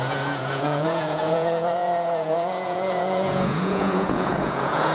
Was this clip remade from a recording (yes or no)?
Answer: yes